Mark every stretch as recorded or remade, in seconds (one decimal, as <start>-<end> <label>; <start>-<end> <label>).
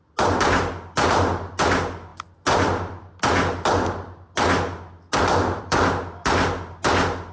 0.0-7.3 recorded